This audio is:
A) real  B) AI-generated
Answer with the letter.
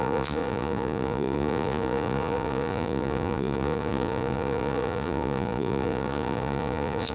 B